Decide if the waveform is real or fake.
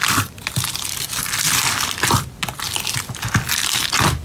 real